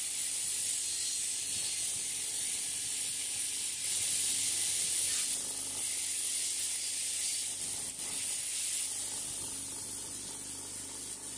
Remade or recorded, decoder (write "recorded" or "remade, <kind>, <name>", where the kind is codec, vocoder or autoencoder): recorded